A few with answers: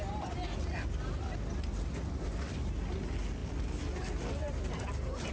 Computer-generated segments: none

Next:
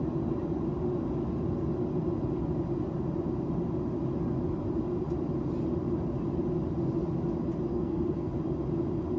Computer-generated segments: 7.7-8.3 (codec, SNAC)

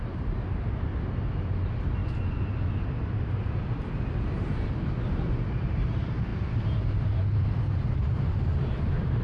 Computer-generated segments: 0.0-0.9 (vocoder, BigVGAN v2); 1.4-2.0; 3.6-9.2

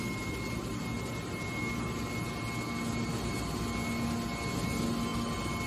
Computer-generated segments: none

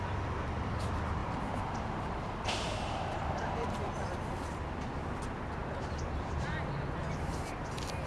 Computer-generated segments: 1.2-4.0 (vocoder, BigVGAN v2); 5.6-6.5